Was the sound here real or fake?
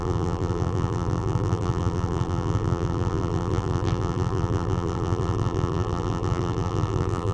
fake